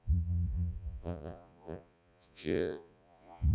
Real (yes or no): no